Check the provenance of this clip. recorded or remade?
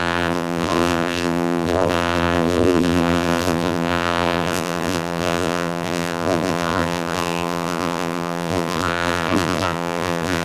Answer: remade